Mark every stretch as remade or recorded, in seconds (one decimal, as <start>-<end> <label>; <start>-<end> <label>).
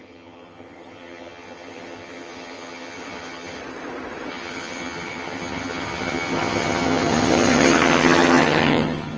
0.0-3.6 remade; 3.6-4.3 recorded; 4.3-9.2 remade